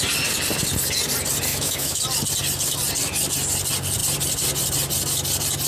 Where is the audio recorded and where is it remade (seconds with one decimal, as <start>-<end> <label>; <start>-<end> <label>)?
0.0-1.5 recorded; 1.5-2.0 remade; 2.0-5.7 recorded